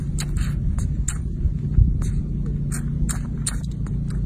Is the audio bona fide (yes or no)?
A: yes